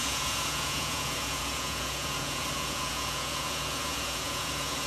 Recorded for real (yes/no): no